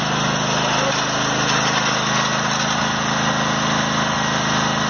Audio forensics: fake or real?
real